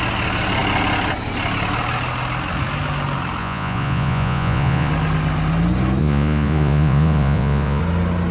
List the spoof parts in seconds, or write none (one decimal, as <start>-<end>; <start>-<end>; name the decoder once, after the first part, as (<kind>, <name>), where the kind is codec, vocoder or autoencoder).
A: 3.4-4.9 (vocoder, Vocos); 6.0-7.8